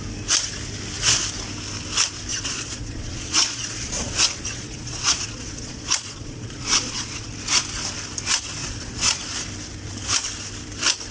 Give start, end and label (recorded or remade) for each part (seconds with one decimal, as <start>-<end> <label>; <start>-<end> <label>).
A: 0.0-2.3 recorded; 2.3-7.3 remade; 7.3-8.6 recorded; 8.6-9.2 remade; 9.2-11.1 recorded